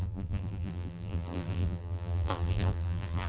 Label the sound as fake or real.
fake